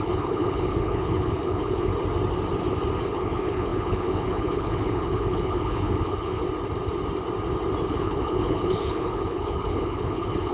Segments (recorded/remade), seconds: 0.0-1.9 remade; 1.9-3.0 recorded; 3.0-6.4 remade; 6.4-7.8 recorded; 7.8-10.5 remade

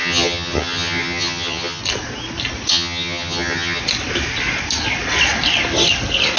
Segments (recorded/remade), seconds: 0.0-1.8 remade; 1.8-2.7 recorded; 2.7-3.8 remade; 3.8-6.4 recorded

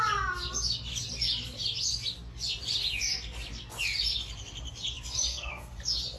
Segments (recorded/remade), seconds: 0.0-5.3 recorded; 5.3-5.8 remade; 5.8-6.2 recorded

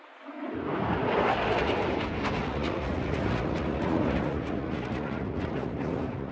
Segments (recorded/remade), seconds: 0.0-2.4 recorded; 2.4-6.3 remade

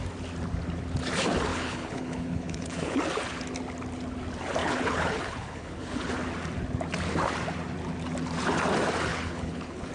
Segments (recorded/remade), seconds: 0.0-1.5 recorded; 1.5-3.0 remade; 3.0-4.6 recorded; 4.6-6.1 remade; 6.1-9.1 recorded; 9.1-9.9 remade

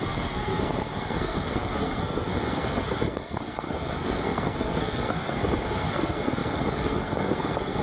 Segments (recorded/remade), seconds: 0.0-7.8 remade

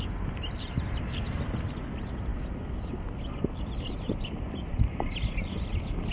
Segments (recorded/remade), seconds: 0.0-6.1 recorded